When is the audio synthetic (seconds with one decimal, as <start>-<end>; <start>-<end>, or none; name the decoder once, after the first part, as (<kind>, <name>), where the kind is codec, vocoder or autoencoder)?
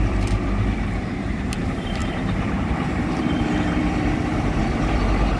0.0-5.4 (vocoder, BigVGAN v2)